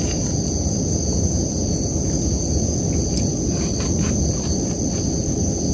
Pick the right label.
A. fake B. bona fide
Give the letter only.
B